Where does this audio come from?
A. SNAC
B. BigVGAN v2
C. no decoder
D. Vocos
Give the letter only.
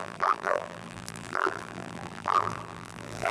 B